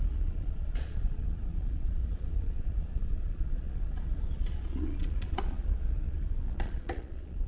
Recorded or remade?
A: remade